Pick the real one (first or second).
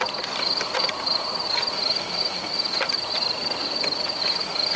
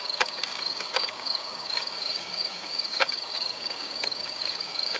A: first